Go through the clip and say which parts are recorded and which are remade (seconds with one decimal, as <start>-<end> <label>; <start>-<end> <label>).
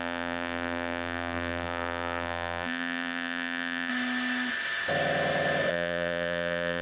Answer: 0.0-3.9 remade; 3.9-5.7 recorded; 5.7-6.8 remade